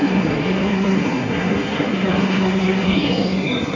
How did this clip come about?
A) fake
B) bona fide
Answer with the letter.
A